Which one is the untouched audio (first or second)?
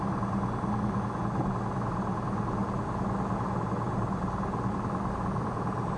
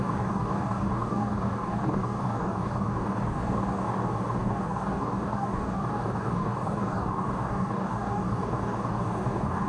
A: first